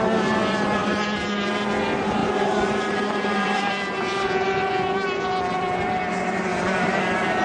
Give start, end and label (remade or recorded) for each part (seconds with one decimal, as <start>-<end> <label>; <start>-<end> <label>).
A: 0.0-2.2 recorded; 2.2-3.7 remade; 3.7-6.5 recorded; 6.5-7.0 remade; 7.0-7.4 recorded

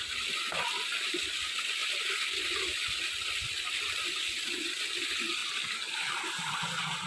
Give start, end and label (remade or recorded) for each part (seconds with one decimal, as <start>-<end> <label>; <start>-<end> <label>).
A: 0.0-1.8 recorded; 1.8-3.9 remade; 3.9-5.4 recorded; 5.4-7.1 remade

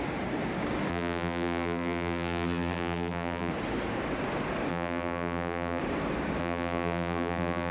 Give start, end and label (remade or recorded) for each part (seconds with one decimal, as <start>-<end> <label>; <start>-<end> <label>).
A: 0.0-0.9 recorded; 0.9-3.5 remade; 3.5-4.7 recorded; 4.7-5.8 remade; 5.8-6.4 recorded; 6.4-7.7 remade

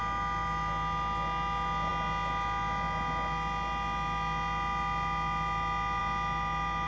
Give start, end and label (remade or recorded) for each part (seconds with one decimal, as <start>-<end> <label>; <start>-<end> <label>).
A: 0.0-6.9 recorded

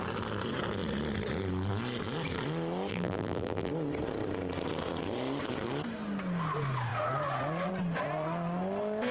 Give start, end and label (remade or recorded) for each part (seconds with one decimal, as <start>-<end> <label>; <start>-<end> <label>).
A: 0.0-2.9 recorded; 2.9-3.7 remade; 3.7-9.1 recorded

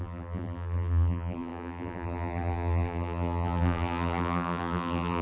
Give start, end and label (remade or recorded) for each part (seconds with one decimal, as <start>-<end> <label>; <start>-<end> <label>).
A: 0.0-5.2 remade

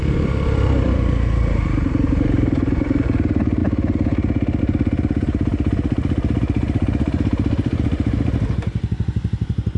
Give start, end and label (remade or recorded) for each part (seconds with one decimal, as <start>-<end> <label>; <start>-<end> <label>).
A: 0.0-3.6 remade; 3.6-4.6 recorded; 4.6-9.8 remade